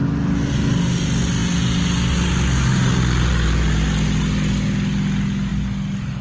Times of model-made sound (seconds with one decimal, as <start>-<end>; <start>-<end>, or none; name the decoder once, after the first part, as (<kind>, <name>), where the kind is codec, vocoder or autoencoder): none